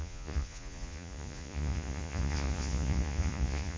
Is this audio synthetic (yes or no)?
yes